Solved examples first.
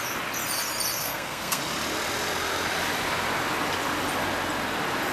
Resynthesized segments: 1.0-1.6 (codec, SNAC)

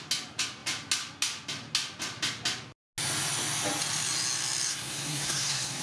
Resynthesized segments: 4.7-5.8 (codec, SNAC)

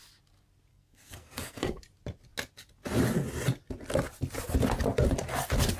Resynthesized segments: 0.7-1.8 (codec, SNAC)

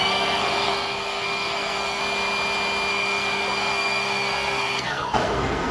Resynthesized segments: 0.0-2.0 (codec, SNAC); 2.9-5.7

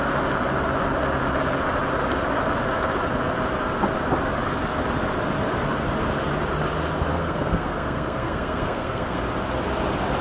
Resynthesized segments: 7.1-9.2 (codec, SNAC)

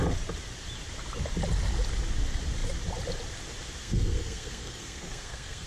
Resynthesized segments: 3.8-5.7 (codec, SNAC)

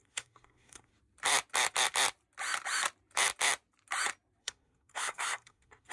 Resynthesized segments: 0.0-0.9 (codec, SNAC); 4.4-5.9

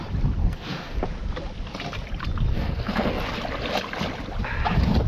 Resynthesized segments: 0.4-1.0 (codec, SNAC); 2.5-3.2